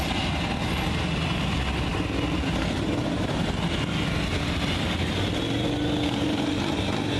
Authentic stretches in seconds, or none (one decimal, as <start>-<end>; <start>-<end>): 0.0-7.2